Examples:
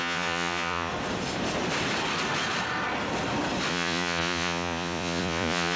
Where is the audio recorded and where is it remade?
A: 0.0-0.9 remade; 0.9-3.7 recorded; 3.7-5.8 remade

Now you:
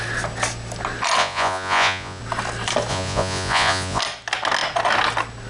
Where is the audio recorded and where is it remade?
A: 0.0-1.2 recorded; 1.2-2.2 remade; 2.2-2.9 recorded; 2.9-4.0 remade; 4.0-5.5 recorded

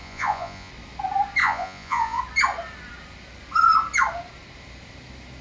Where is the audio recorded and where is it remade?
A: 0.0-0.7 remade; 0.7-1.4 recorded; 1.4-2.2 remade; 2.2-5.4 recorded